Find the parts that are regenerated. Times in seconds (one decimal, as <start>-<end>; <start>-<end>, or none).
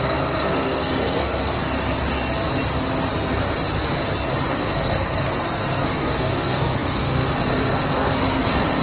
0.0-1.6; 4.5-8.8